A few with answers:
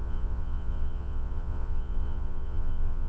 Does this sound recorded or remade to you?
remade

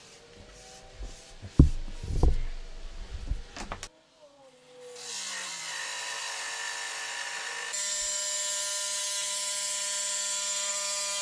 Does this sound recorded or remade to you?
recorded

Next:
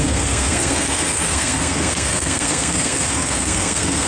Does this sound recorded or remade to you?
remade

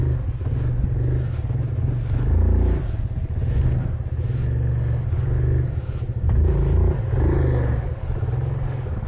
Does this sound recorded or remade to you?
recorded